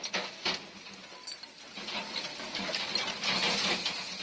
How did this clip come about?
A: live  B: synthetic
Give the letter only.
A